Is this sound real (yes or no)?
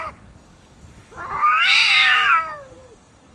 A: no